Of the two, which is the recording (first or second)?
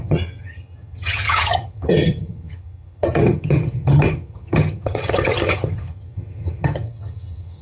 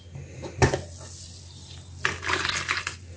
second